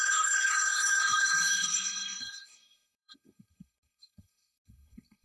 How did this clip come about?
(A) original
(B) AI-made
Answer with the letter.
B